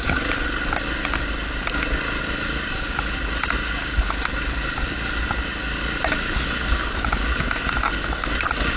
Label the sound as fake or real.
real